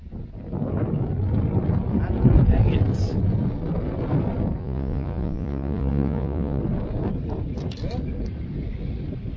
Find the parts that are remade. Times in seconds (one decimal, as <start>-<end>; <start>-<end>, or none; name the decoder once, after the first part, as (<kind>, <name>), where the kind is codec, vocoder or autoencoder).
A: 4.6-6.6 (vocoder, Vocos)